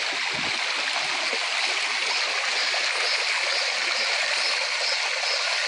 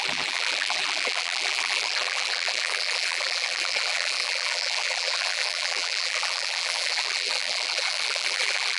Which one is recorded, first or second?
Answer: first